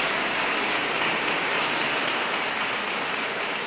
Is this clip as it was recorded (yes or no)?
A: no